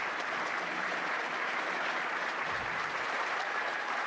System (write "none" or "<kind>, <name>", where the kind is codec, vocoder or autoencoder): vocoder, BigVGAN v2